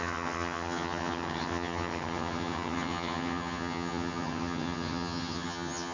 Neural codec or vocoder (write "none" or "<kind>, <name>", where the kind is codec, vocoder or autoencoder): vocoder, HiFi-GAN